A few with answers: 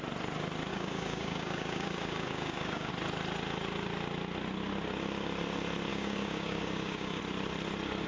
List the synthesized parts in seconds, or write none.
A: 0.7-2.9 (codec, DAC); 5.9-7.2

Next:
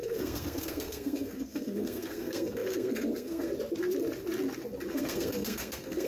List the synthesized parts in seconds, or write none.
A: 0.0-3.5 (codec, SNAC); 4.9-6.1

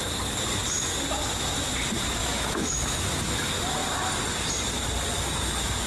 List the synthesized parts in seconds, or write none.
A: 2.2-3.2 (autoencoder, DAC-VAE)

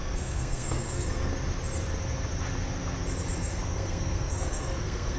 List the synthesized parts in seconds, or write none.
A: 0.0-1.3 (codec, SNAC); 3.4-5.2

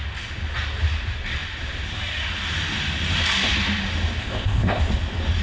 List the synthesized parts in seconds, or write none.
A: 4.2-4.8 (codec, ZipCodec)